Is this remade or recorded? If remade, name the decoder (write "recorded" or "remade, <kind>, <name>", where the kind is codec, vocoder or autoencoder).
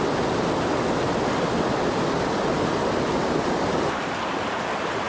recorded